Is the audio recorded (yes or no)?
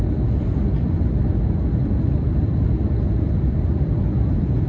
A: no